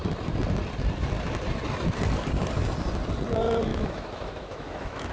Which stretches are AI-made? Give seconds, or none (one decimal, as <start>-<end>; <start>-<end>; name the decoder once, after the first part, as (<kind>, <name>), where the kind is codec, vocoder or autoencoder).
3.7-5.1 (autoencoder, DAC-VAE)